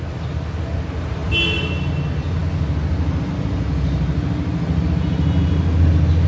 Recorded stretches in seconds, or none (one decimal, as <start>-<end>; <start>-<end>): 0.0-6.3

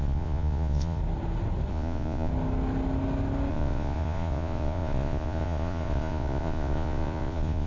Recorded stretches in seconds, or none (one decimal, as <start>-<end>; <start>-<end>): 1.0-1.7; 2.3-3.5